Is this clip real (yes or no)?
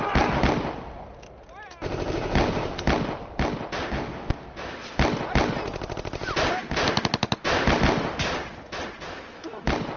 yes